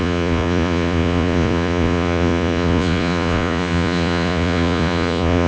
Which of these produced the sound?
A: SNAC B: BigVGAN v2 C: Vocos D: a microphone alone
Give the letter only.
C